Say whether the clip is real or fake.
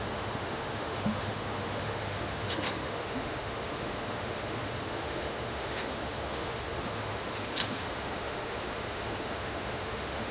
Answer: fake